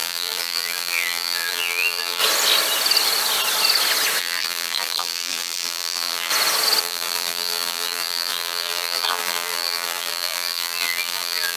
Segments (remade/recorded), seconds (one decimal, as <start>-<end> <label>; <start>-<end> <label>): 0.0-2.2 remade; 2.2-4.2 recorded; 4.2-6.3 remade; 6.3-6.8 recorded; 6.8-11.6 remade